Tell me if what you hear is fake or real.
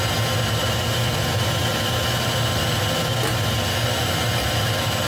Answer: real